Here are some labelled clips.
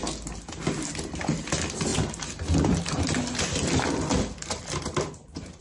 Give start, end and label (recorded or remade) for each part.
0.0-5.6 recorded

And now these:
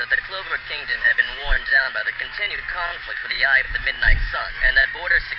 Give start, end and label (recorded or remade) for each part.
0.0-0.9 recorded; 0.9-2.5 remade; 2.5-2.9 recorded; 2.9-4.4 remade; 4.4-5.4 recorded